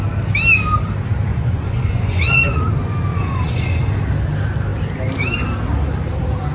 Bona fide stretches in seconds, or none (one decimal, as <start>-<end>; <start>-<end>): 0.0-1.3; 2.6-3.1; 3.8-6.5